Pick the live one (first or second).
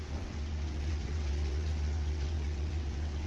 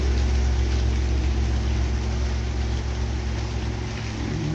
second